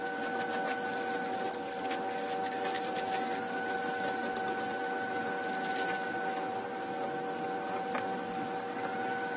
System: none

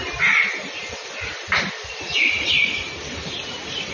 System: none